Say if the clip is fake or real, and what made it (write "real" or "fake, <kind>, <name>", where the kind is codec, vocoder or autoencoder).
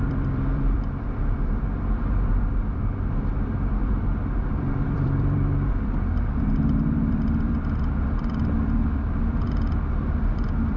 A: fake, vocoder, BigVGAN v2